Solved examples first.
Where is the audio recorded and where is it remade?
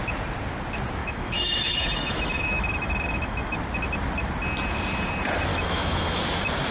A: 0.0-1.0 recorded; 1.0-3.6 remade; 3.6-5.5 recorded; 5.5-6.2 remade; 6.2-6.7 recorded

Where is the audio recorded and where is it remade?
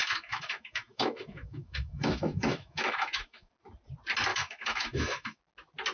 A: 0.0-3.5 remade; 3.5-4.3 recorded; 4.3-5.4 remade; 5.4-5.9 recorded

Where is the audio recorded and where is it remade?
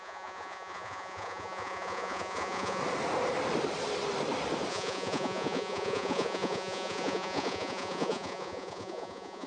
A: 0.0-2.8 remade; 2.8-4.7 recorded; 4.7-9.5 remade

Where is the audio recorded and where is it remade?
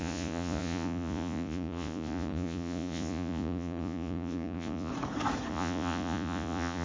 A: 0.0-4.9 remade; 4.9-5.5 recorded; 5.5-6.8 remade